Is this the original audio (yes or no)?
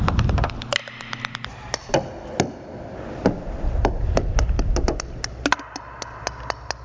yes